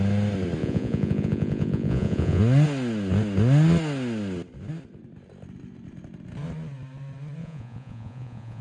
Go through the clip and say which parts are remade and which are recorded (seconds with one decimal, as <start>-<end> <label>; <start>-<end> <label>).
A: 0.0-0.6 recorded; 0.6-2.4 remade; 2.4-7.4 recorded; 7.4-8.6 remade